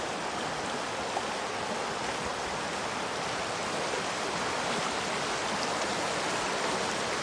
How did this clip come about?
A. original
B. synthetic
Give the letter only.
A